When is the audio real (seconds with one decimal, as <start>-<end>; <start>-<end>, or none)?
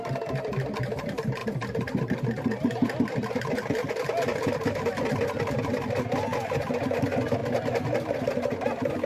0.0-9.1